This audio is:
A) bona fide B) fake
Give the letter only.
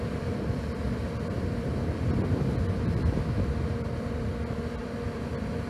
B